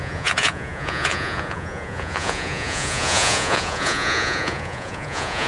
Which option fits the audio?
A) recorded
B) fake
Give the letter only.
B